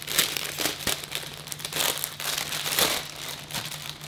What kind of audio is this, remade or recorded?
recorded